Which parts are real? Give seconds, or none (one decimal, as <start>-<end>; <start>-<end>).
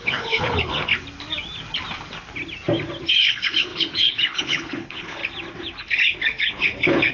0.9-3.1; 5.2-5.8